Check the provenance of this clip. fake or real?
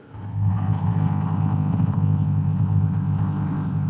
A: fake